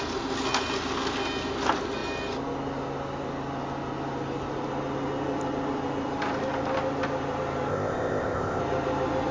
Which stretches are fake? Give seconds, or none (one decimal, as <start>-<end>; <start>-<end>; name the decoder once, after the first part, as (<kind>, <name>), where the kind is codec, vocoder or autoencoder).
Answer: 7.7-8.6 (codec, ZipCodec)